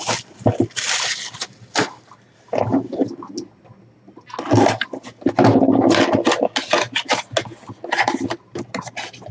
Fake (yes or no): no